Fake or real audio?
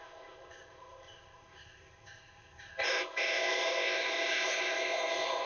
fake